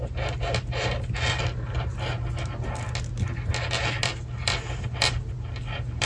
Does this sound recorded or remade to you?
recorded